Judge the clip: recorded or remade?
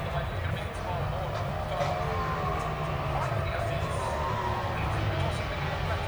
recorded